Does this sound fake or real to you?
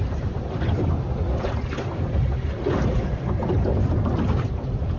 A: real